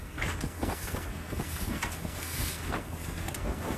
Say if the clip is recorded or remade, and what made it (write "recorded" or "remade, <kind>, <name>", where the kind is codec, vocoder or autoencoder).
remade, codec, SNAC